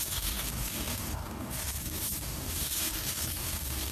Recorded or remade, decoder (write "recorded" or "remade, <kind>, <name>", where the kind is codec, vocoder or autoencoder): remade, codec, DAC